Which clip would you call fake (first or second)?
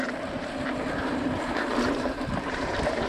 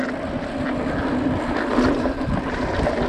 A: first